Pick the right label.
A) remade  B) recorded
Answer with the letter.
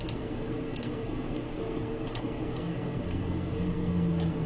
A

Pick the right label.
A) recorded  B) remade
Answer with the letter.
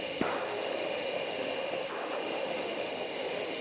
B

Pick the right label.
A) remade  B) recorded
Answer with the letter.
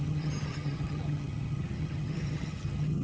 A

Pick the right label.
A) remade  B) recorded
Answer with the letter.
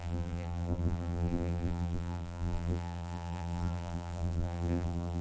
A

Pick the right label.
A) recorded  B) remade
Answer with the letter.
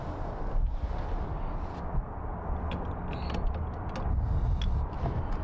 A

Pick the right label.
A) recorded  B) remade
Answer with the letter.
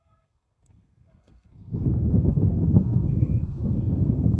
B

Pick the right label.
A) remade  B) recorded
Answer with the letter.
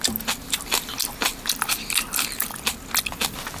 B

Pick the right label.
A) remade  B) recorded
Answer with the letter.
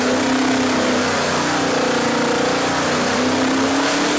B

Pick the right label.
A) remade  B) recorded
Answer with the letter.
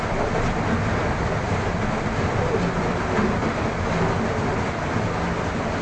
B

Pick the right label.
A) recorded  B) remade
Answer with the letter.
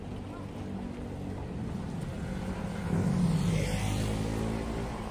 A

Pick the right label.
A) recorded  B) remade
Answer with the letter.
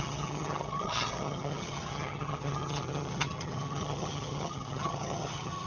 B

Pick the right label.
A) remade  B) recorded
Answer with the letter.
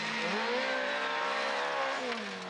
B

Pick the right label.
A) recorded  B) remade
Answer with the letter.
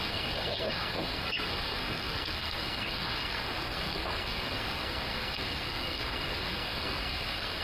B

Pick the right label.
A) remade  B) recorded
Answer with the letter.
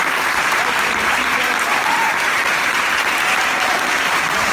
A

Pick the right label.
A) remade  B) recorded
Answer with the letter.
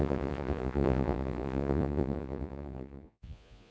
A